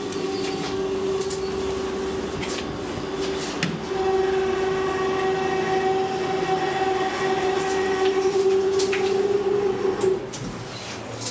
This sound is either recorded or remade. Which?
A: recorded